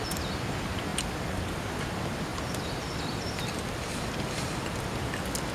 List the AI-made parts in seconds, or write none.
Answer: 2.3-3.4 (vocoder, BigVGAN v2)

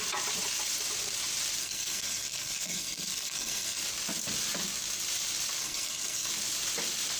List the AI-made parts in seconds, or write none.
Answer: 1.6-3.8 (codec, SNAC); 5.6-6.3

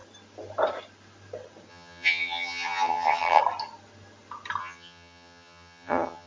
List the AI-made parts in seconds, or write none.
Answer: 1.7-3.4 (vocoder, HiFi-GAN); 4.6-6.3